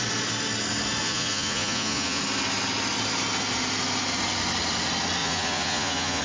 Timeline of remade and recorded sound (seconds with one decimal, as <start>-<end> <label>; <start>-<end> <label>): 0.0-1.0 recorded; 1.0-2.2 remade; 2.2-5.2 recorded; 5.2-6.2 remade